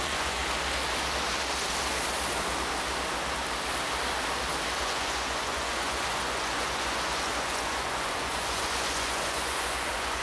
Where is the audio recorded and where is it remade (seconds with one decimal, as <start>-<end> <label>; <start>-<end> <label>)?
0.0-0.4 remade; 0.4-4.8 recorded; 4.8-10.2 remade